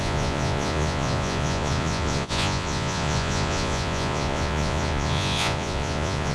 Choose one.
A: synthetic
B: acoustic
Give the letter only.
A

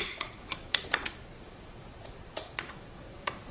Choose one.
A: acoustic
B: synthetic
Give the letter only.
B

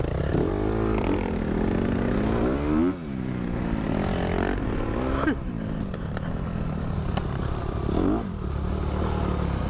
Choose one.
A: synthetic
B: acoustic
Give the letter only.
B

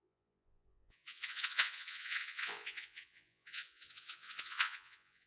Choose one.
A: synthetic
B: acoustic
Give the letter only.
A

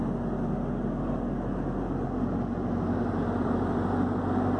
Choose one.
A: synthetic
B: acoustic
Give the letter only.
B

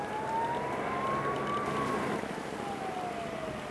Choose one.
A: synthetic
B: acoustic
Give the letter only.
B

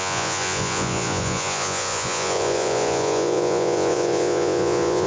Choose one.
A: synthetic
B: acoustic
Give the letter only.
A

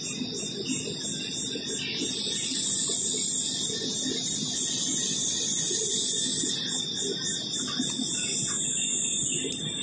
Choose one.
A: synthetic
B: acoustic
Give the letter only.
B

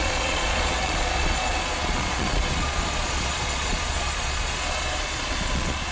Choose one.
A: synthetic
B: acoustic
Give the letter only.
A